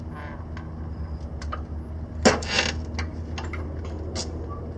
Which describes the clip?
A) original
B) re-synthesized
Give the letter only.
A